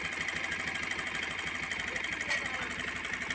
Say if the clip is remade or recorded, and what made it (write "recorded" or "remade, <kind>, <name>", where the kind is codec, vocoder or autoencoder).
recorded